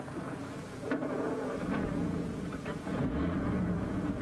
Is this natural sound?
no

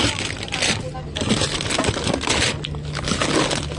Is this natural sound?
yes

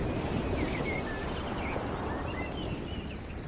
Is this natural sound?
yes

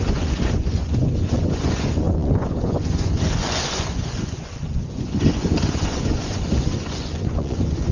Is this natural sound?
no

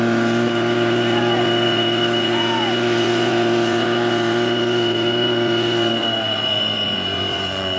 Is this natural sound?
no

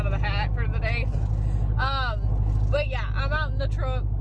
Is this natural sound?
yes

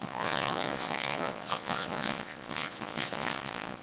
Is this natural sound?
no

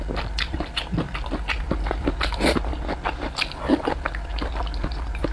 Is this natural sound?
yes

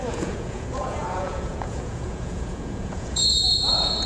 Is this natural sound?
no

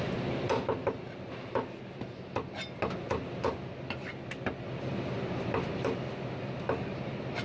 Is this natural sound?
yes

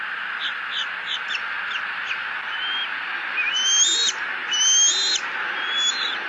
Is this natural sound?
yes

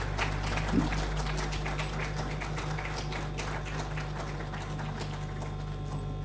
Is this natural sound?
yes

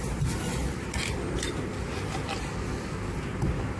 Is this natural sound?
yes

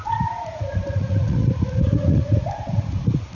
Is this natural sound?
no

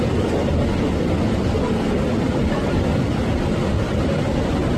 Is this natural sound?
yes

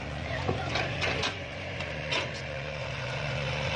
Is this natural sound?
no